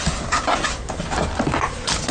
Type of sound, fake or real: real